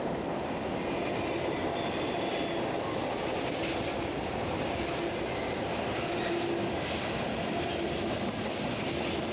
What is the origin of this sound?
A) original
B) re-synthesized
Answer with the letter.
A